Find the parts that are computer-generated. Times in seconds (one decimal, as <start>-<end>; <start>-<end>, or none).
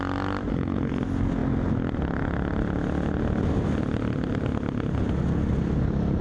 0.5-1.0